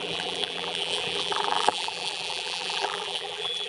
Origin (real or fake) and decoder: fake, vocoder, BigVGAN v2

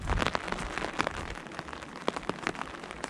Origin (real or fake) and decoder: real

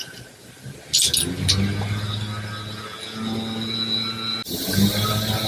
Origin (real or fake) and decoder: real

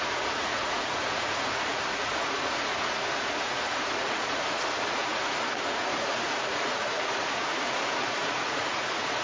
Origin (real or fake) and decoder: fake, vocoder, Vocos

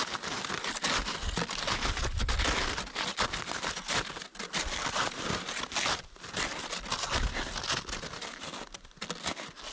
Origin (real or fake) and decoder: real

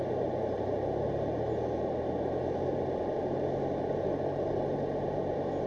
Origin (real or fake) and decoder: real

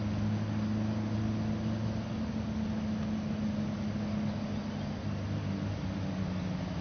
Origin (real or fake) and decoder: real